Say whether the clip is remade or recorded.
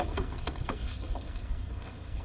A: remade